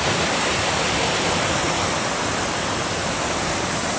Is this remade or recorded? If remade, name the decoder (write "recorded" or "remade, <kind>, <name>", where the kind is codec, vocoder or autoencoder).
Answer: recorded